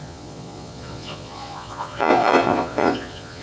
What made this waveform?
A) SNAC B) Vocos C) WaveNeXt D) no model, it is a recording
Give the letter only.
B